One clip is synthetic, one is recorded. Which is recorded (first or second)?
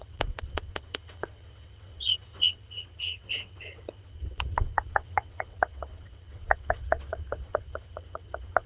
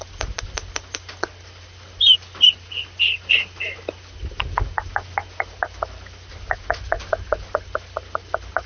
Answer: second